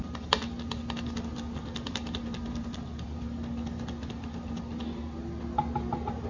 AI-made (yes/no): no